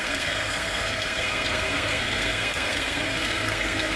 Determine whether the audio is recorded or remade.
remade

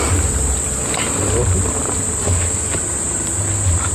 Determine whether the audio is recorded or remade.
remade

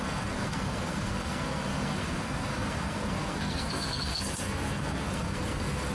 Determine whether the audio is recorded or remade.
remade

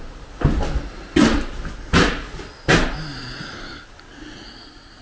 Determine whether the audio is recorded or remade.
recorded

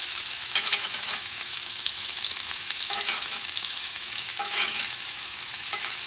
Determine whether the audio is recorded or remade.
remade